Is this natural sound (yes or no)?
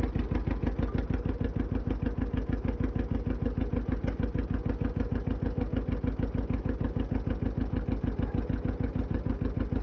yes